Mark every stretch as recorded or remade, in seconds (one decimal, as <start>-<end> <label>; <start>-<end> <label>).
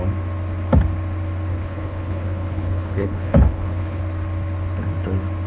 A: 0.0-1.5 recorded; 1.5-4.0 remade; 4.0-5.5 recorded